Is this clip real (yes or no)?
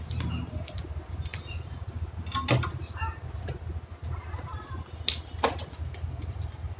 yes